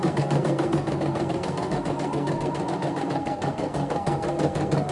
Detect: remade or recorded remade